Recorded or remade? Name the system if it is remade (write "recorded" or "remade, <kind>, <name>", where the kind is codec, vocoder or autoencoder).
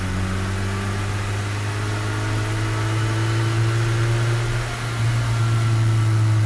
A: recorded